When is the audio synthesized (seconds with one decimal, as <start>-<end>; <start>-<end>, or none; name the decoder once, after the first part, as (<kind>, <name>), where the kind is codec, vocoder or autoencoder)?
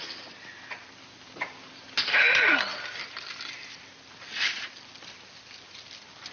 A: none